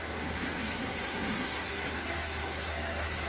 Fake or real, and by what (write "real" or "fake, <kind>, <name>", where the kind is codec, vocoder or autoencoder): fake, codec, SNAC